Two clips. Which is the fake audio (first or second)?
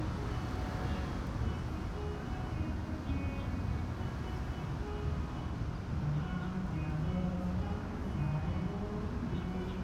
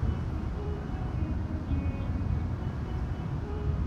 second